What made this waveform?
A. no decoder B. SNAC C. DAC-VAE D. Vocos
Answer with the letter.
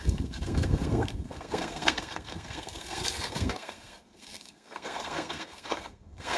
B